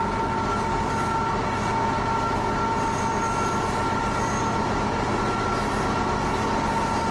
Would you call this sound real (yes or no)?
yes